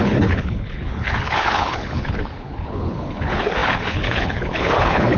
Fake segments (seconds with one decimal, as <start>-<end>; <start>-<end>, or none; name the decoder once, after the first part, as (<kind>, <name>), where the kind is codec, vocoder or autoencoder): 0.0-5.2 (codec, HILCodec)